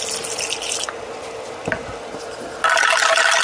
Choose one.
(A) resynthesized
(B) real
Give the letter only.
B